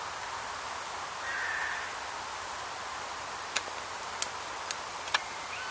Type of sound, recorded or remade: recorded